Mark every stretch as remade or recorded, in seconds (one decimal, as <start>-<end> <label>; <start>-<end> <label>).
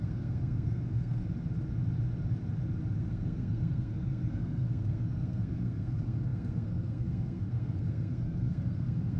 0.0-1.2 remade; 1.2-3.0 recorded; 3.0-9.2 remade